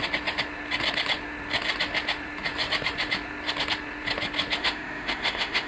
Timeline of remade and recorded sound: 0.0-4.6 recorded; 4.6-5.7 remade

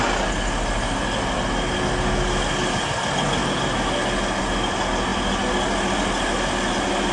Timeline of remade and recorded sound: 0.0-7.1 recorded

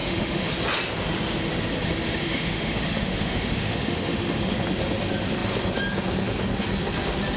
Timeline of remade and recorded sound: 0.0-0.5 remade; 0.5-2.2 recorded; 2.2-4.5 remade; 4.5-7.4 recorded

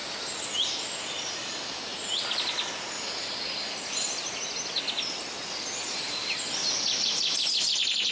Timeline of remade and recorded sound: 0.0-8.1 recorded